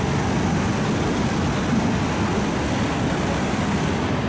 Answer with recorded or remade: recorded